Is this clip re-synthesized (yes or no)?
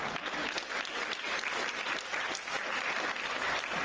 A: no